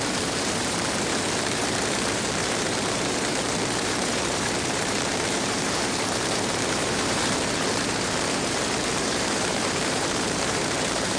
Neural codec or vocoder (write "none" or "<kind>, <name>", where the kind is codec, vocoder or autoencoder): vocoder, BigVGAN v2